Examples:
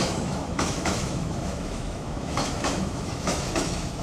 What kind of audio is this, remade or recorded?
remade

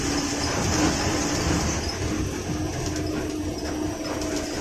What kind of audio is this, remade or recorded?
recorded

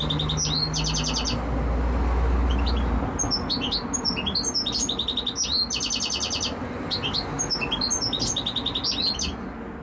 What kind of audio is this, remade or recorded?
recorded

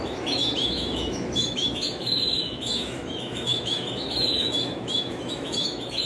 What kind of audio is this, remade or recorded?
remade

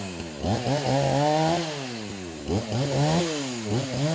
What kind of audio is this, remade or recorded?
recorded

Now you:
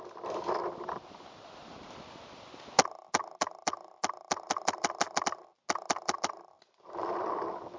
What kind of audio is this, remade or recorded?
recorded